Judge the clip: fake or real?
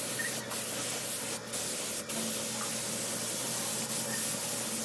real